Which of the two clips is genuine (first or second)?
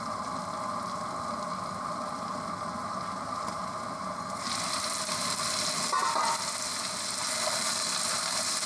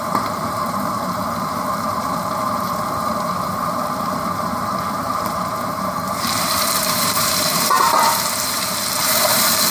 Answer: first